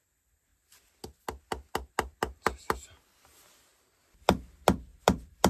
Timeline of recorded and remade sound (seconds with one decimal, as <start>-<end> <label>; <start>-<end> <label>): 0.0-4.9 recorded; 4.9-5.5 remade

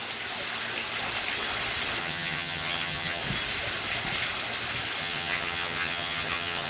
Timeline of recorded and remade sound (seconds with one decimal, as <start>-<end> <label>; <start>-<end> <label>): 0.0-2.0 recorded; 2.0-3.2 remade; 3.2-5.0 recorded; 5.0-6.7 remade

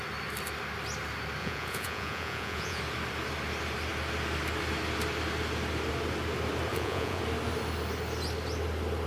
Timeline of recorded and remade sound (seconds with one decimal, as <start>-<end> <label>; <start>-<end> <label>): 0.0-1.4 recorded; 1.4-2.8 remade; 2.8-6.7 recorded; 6.7-7.2 remade; 7.2-9.1 recorded

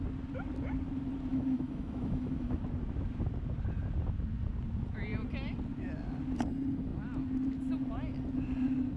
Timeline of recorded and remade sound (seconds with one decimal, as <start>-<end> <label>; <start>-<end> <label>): 0.0-1.3 recorded; 1.3-2.6 remade; 2.6-9.0 recorded

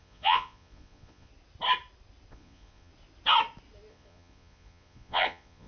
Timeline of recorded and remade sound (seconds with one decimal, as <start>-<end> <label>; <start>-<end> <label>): 0.0-1.3 remade; 1.3-2.3 recorded; 2.3-2.9 remade; 2.9-3.9 recorded; 3.9-5.7 remade

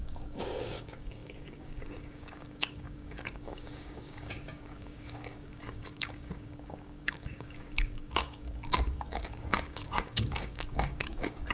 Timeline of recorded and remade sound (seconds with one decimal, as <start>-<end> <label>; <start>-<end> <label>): 0.0-11.5 remade

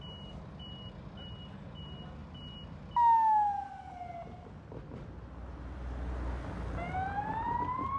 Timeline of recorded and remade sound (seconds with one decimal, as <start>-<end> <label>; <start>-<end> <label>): 0.0-8.0 recorded

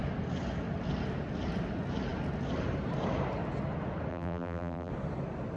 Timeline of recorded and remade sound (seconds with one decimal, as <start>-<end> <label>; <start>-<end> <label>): 0.0-4.1 recorded; 4.1-4.9 remade; 4.9-5.6 recorded